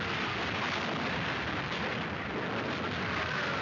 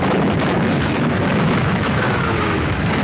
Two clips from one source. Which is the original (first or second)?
first